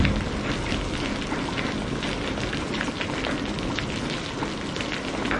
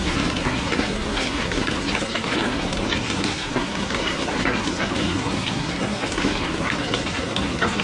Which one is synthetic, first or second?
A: second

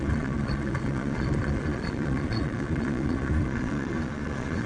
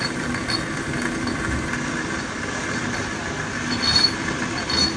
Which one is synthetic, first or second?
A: first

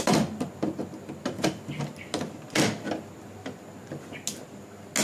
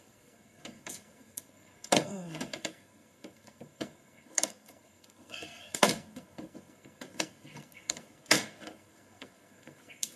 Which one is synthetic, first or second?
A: second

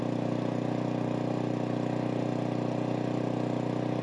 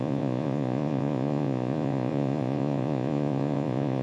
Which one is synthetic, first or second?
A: second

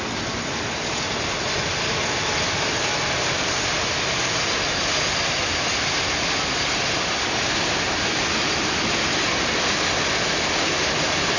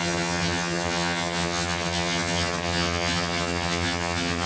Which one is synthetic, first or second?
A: second